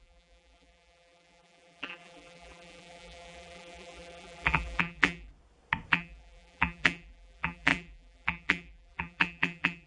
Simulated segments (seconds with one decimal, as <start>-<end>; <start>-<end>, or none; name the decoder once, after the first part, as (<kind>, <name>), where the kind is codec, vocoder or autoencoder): 0.0-5.3 (vocoder, BigVGAN v2); 5.9-9.9